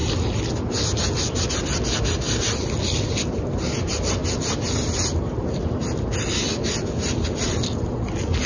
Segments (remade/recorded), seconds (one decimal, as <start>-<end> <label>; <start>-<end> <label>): 0.0-8.5 recorded